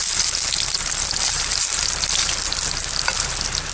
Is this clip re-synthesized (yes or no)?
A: no